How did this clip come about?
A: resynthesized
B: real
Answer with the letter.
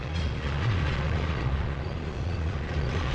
A